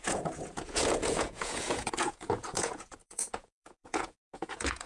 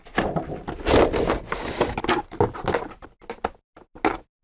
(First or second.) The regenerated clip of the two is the first